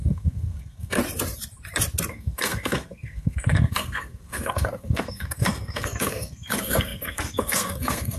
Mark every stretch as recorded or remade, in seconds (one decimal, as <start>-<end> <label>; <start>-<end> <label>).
0.0-1.0 remade; 1.0-2.1 recorded; 2.1-8.2 remade